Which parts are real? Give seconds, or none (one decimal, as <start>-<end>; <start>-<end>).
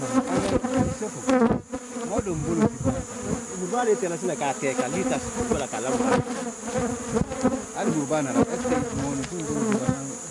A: 0.0-10.3